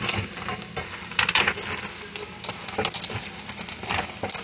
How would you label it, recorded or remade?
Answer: recorded